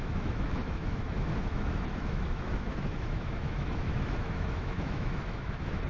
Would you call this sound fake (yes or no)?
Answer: yes